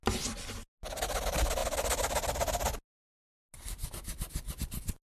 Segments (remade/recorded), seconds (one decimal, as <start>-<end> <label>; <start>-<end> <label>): 0.0-5.0 recorded